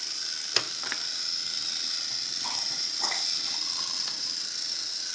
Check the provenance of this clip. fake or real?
real